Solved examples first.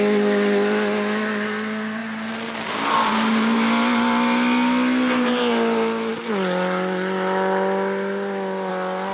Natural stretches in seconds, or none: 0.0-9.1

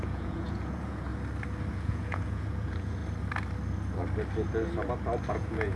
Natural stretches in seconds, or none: 1.1-1.7; 3.0-5.3

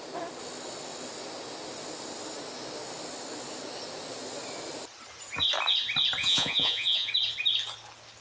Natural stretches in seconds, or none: 0.0-6.2; 7.1-8.2

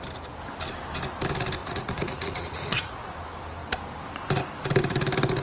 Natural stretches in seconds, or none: 0.0-1.6; 3.1-5.4

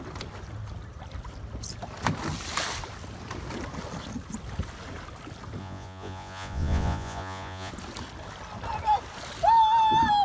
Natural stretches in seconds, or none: 0.0-5.6; 7.7-10.2